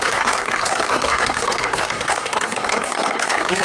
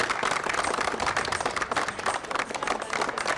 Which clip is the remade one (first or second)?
first